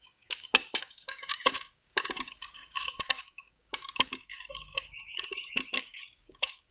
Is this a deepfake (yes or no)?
yes